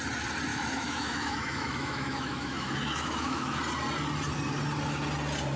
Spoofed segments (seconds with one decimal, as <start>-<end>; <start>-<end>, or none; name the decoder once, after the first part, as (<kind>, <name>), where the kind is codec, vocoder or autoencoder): 0.5-3.6 (autoencoder, DAC-VAE)